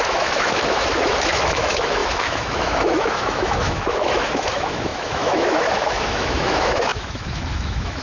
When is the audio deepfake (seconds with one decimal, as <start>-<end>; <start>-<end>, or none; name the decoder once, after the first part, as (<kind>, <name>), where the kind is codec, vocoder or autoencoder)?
0.0-8.0 (autoencoder, DAC-VAE)